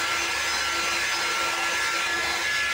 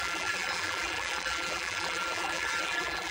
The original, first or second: first